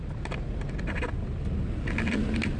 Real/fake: real